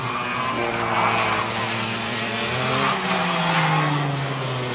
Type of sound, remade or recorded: recorded